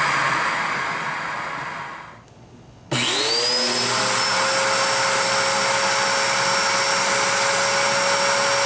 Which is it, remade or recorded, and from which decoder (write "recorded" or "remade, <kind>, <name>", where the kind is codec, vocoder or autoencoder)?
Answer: recorded